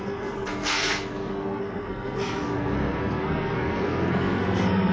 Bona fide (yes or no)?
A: no